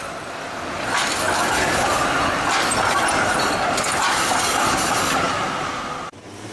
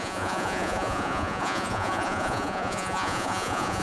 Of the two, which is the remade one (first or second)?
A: second